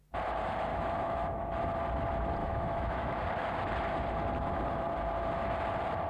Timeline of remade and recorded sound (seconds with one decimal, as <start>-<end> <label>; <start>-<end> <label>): 0.0-0.7 recorded; 0.7-1.6 remade; 1.6-2.4 recorded; 2.4-3.2 remade; 3.2-6.1 recorded